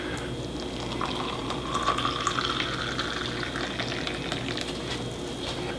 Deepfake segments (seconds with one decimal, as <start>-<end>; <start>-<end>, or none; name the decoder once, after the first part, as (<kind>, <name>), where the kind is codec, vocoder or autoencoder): none